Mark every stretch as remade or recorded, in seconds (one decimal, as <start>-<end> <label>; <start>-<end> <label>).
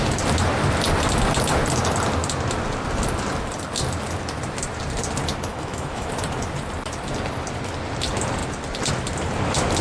0.0-5.5 recorded; 5.5-6.1 remade; 6.1-9.8 recorded